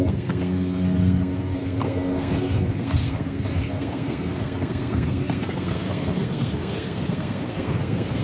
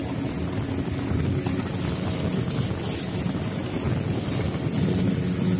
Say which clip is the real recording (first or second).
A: second